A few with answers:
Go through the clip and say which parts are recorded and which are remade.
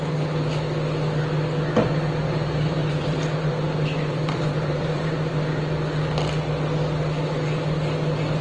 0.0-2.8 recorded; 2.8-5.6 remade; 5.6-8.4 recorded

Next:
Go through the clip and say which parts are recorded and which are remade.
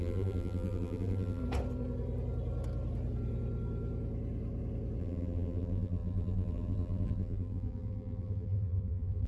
0.0-1.4 remade; 1.4-5.0 recorded; 5.0-9.3 remade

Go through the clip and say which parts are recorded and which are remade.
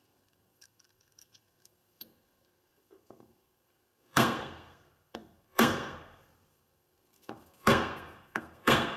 0.0-9.0 remade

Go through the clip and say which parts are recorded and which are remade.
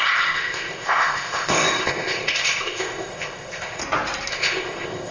0.0-3.8 remade; 3.8-4.3 recorded; 4.3-5.1 remade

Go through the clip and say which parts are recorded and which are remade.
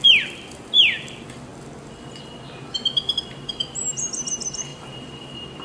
0.0-1.5 remade; 1.5-3.5 recorded; 3.5-5.6 remade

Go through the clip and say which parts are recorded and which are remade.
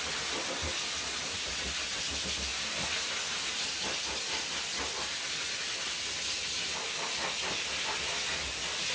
0.0-8.9 recorded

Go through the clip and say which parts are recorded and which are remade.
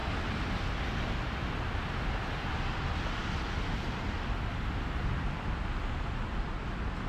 0.0-2.5 recorded; 2.5-7.1 remade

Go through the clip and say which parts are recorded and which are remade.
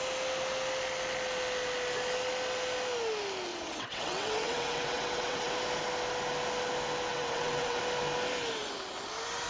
0.0-3.5 recorded; 3.5-5.5 remade; 5.5-7.1 recorded; 7.1-7.8 remade; 7.8-9.5 recorded